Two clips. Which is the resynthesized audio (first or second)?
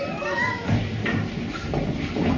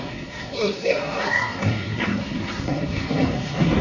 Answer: second